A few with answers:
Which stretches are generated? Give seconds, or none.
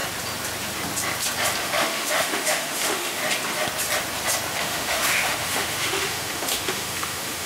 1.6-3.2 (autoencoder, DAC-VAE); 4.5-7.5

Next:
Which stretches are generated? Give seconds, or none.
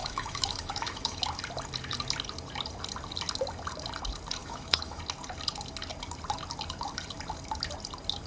0.0-1.2 (autoencoder, DAC-VAE); 4.4-5.0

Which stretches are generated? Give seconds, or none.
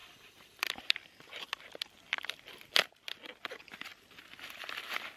none